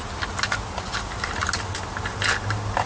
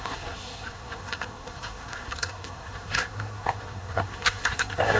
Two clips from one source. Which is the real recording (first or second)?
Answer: first